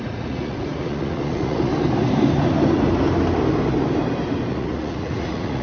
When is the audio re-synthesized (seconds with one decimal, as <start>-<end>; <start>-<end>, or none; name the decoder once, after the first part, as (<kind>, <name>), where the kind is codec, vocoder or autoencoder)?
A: 0.0-1.7 (vocoder, Vocos); 4.5-5.6